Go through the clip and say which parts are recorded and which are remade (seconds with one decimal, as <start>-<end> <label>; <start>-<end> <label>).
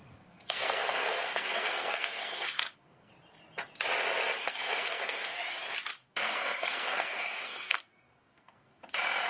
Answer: 0.0-3.1 remade; 3.1-4.4 recorded; 4.4-5.4 remade; 5.4-6.0 recorded; 6.0-8.8 remade; 8.8-9.3 recorded